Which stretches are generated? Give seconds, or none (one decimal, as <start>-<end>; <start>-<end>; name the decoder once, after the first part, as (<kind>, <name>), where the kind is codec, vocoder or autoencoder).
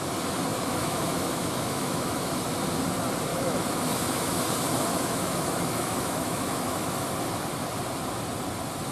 0.5-2.4 (autoencoder, DAC-VAE); 3.3-4.4; 4.9-7.1